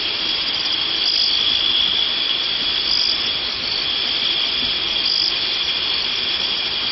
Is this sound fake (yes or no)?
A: no